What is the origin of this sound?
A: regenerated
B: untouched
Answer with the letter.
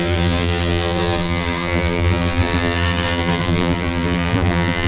A